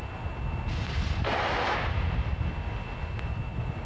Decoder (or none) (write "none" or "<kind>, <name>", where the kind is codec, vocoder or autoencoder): none